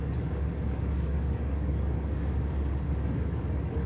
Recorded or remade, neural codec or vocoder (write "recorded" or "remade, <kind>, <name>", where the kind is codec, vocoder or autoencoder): remade, codec, DAC